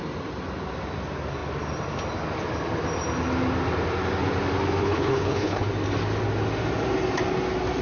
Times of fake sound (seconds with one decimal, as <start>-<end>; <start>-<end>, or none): 4.8-5.7